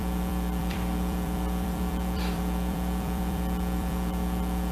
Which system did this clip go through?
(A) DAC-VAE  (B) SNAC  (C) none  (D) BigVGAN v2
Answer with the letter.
D